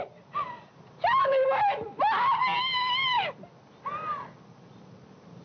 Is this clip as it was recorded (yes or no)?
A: yes